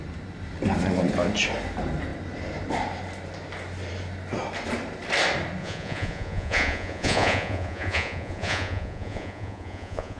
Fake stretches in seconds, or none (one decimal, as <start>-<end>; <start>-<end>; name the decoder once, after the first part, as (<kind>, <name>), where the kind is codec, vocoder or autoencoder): 5.6-10.2 (vocoder, Vocos)

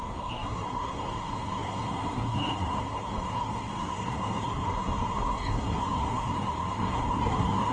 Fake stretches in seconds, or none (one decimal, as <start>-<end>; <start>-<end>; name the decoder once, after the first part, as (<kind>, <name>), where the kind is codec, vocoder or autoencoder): 0.0-7.7 (codec, SNAC)

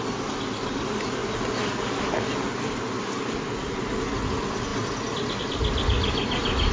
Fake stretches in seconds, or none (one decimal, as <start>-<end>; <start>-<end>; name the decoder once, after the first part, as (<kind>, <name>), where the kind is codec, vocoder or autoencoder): none

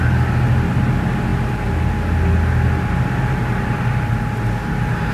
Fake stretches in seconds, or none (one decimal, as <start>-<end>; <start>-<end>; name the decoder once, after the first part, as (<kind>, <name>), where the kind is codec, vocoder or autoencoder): none

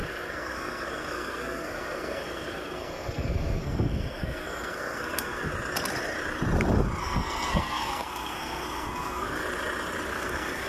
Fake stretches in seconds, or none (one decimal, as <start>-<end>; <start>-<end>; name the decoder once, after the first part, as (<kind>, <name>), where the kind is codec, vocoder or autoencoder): 0.0-5.5 (codec, SNAC); 7.0-9.4; 10.1-10.7

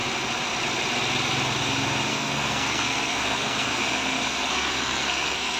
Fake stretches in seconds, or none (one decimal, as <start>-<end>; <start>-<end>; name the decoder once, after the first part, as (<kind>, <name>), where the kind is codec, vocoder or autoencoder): 2.1-5.6 (codec, SNAC)

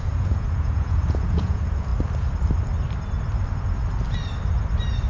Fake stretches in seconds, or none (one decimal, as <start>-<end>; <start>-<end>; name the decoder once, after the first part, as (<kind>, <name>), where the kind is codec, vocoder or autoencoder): 0.0-1.9 (vocoder, Vocos)